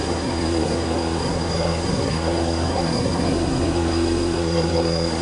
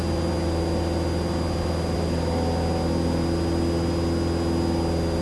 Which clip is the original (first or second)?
second